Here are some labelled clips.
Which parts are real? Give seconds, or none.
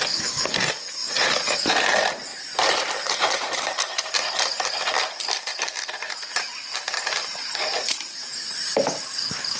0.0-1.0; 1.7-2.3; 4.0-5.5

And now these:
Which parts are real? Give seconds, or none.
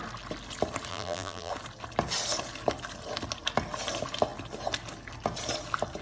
0.0-0.9; 1.5-6.0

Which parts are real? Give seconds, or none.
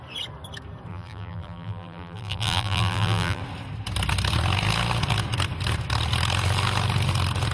0.0-0.9; 3.4-7.5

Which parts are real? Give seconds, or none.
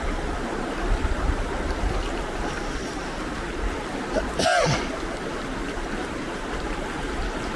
4.2-5.3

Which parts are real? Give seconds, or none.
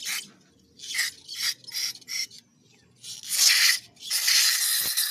0.0-5.1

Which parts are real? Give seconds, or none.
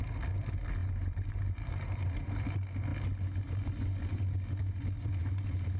0.0-0.8; 2.4-5.8